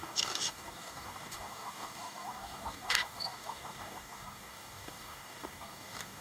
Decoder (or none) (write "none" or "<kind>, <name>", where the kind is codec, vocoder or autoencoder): codec, DAC